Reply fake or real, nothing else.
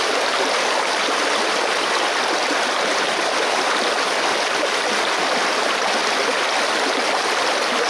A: real